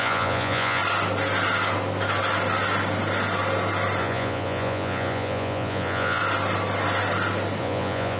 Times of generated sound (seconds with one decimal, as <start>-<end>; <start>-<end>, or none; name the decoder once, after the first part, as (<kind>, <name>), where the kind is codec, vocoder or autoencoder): 0.0-0.8 (vocoder, Vocos); 4.0-6.2; 7.6-8.2